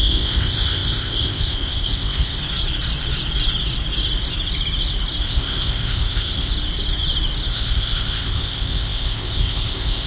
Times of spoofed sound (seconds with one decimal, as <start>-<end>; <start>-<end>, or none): 0.0-2.4; 5.3-6.5; 7.5-10.1